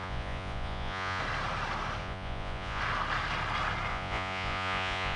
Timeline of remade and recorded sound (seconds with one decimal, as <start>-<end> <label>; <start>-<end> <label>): 0.0-1.2 remade; 1.2-2.0 recorded; 2.0-2.8 remade; 2.8-3.9 recorded; 3.9-5.2 remade